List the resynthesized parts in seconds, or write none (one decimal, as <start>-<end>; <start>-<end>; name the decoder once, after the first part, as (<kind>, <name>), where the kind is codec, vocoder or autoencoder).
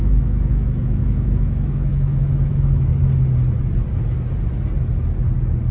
0.0-2.9 (autoencoder, DAC-VAE)